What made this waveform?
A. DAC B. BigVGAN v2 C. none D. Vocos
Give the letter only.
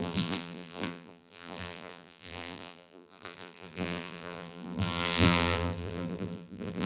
B